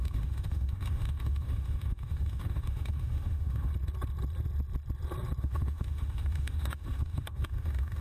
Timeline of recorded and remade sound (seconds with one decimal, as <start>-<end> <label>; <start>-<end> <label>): 0.0-3.7 remade; 3.7-5.4 recorded; 5.4-8.0 remade